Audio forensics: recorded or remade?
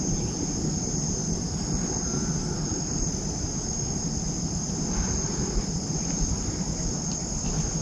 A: recorded